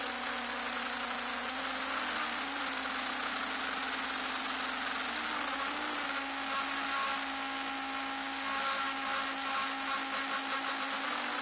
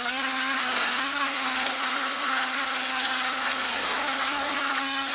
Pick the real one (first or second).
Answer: first